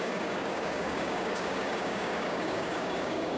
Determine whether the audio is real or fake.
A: fake